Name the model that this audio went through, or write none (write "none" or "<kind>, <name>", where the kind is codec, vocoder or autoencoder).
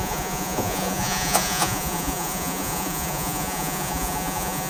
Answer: vocoder, Vocos